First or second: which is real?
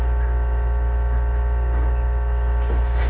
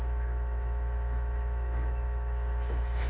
first